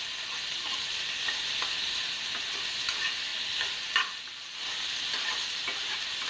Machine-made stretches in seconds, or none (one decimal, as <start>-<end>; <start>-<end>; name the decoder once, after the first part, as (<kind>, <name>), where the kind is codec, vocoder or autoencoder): none